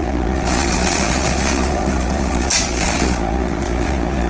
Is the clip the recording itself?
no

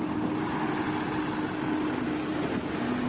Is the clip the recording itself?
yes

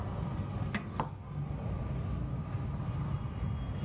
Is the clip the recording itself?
yes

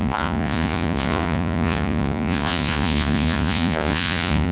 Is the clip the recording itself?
no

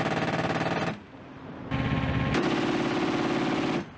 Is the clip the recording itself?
yes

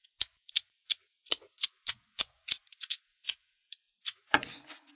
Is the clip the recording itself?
no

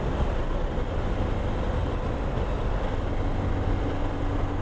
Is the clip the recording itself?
yes